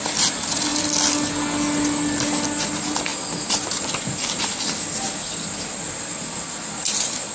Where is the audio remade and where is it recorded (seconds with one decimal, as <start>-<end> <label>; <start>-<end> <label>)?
0.0-7.3 recorded